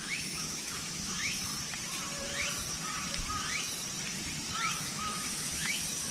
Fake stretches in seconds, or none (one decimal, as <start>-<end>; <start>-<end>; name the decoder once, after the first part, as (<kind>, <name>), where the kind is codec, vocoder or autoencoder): 0.0-1.5 (autoencoder, DAC-VAE); 4.8-6.1